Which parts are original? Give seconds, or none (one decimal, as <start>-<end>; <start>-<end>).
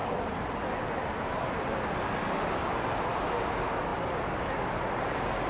0.0-5.5